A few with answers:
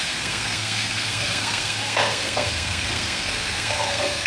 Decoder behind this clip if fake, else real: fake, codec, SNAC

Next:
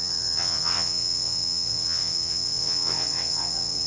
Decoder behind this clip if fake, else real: fake, vocoder, WaveNeXt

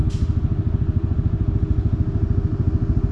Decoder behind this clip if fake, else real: real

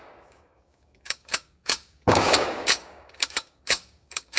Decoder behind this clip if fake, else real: fake, codec, DAC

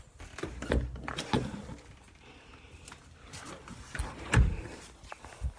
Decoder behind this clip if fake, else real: real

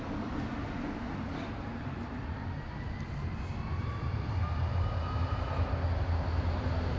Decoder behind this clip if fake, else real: real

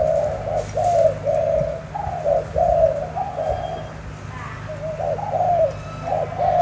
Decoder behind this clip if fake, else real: real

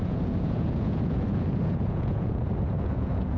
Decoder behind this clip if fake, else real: fake, vocoder, Vocos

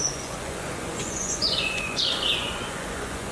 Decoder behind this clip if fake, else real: fake, vocoder, Vocos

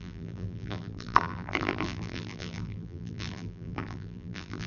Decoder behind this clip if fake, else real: fake, vocoder, BigVGAN v2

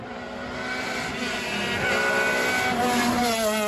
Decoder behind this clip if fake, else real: real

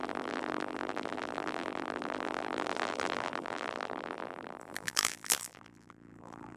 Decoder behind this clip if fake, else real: fake, vocoder, BigVGAN v2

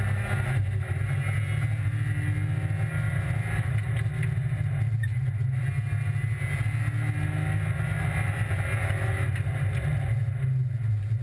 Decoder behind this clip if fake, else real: real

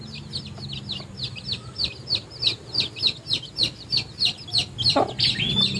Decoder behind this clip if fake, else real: real